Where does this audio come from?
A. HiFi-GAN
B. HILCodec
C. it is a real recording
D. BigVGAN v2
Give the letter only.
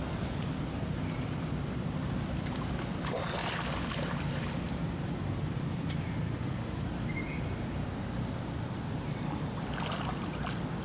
D